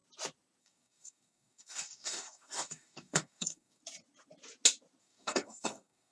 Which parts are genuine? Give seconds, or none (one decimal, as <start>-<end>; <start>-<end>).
0.0-0.6; 3.8-5.0